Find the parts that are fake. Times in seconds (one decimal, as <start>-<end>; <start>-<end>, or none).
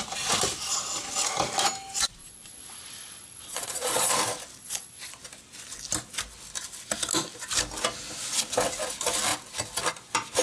2.2-4.1; 4.6-5.1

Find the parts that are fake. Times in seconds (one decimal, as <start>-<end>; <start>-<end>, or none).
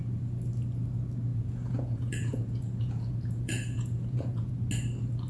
1.3-4.5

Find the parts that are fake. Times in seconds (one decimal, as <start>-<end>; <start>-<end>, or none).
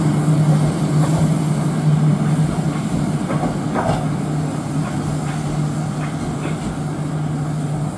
none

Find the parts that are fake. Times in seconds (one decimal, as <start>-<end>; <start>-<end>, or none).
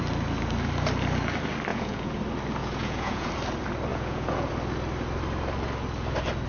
1.7-2.2; 2.6-3.3; 3.9-4.5